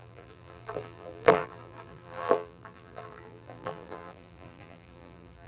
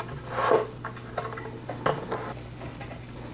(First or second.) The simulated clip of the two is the first